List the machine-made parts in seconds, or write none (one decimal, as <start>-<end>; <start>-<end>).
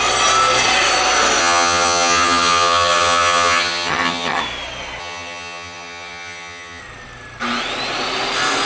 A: 1.4-4.4; 5.0-6.8